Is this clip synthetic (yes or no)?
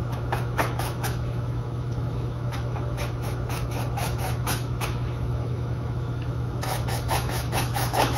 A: yes